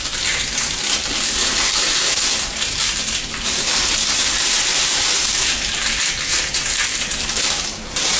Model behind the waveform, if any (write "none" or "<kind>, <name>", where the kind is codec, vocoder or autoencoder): vocoder, BigVGAN v2